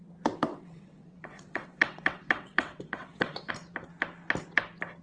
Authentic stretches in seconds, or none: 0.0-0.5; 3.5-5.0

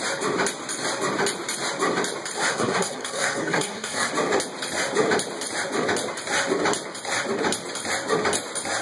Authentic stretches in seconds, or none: 0.0-2.5; 4.1-8.8

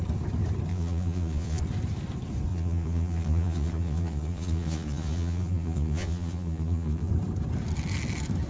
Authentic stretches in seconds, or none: 0.0-0.7; 1.6-2.5; 7.1-8.5

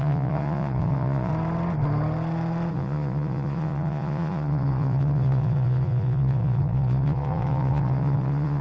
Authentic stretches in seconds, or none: 1.3-2.7

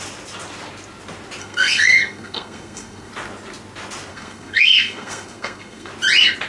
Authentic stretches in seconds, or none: 0.0-1.4; 3.1-4.1; 5.9-6.5

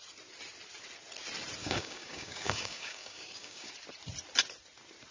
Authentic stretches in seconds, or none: 0.0-1.6; 3.7-5.1

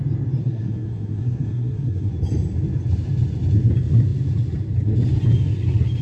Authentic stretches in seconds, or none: 0.0-0.4; 2.1-6.0

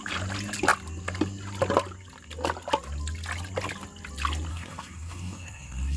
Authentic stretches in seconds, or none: 0.0-4.5